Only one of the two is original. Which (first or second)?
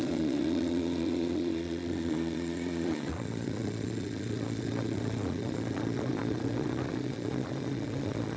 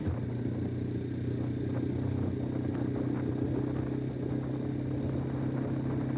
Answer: second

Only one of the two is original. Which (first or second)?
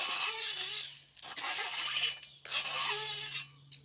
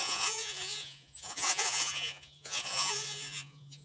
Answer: first